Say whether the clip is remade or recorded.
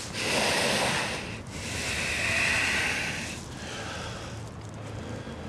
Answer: recorded